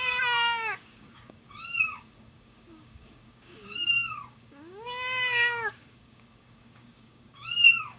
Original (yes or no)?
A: no